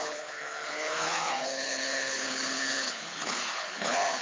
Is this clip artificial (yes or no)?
yes